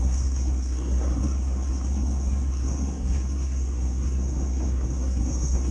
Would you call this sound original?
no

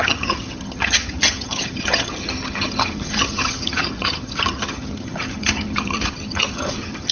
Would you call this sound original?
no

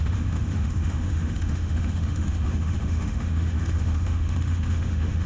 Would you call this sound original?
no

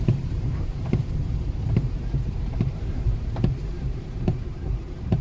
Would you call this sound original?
no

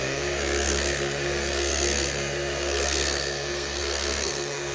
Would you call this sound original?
no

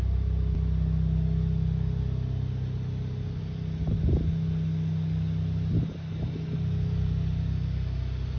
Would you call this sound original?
yes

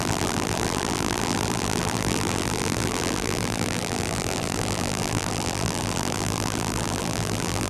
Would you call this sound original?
no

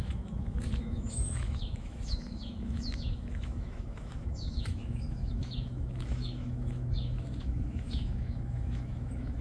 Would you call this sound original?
no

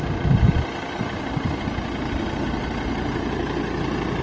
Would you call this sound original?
yes